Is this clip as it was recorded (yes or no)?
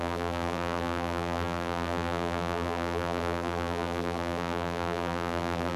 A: no